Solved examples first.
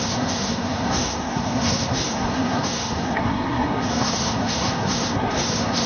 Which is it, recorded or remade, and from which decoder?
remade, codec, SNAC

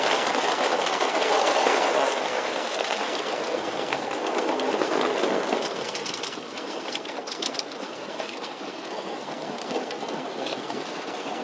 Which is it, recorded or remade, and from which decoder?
remade, codec, SNAC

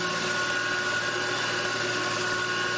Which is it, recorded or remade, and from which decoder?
recorded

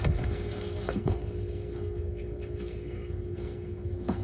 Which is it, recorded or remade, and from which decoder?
remade, codec, SNAC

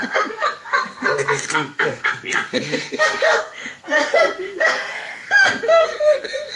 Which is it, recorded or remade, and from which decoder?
remade, codec, SNAC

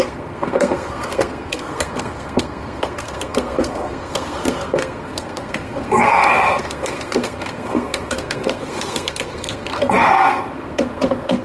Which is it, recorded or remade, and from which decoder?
remade, codec, SNAC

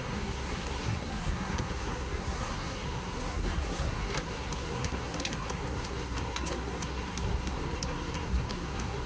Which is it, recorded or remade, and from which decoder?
remade, codec, SNAC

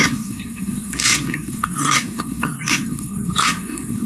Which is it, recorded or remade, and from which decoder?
remade, codec, SNAC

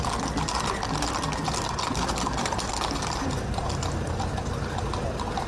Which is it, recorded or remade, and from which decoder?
recorded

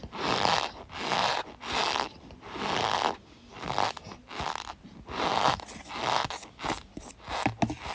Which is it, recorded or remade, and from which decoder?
recorded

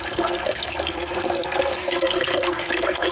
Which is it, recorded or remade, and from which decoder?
remade, codec, SNAC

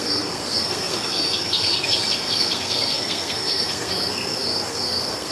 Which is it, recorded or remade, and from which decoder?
remade, codec, SNAC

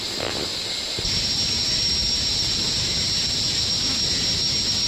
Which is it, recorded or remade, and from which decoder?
recorded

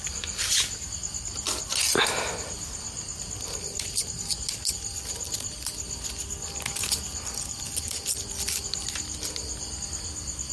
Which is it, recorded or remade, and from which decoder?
recorded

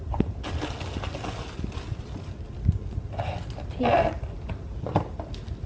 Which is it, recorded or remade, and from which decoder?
recorded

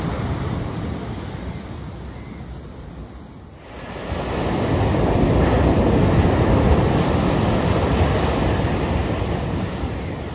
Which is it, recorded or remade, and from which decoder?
recorded